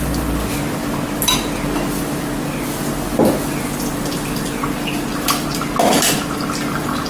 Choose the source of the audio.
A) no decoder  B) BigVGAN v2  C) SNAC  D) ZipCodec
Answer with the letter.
A